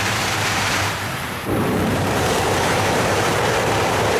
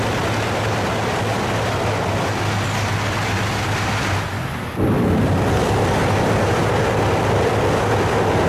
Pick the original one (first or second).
second